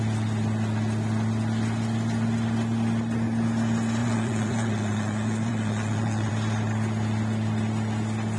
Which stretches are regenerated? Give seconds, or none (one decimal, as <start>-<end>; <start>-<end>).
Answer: 4.0-6.3